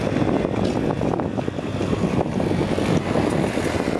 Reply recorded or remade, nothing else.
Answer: recorded